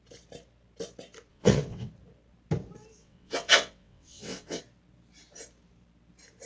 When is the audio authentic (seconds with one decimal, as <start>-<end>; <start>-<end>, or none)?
0.0-1.3; 1.9-3.0; 4.6-6.5